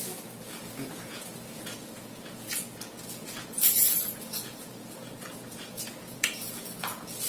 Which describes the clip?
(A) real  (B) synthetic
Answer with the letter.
B